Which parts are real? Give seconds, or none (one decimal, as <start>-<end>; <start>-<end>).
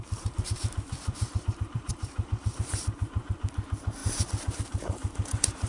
none